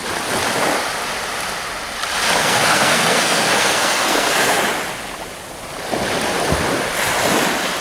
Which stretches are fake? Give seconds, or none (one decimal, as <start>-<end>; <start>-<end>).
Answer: 2.4-4.6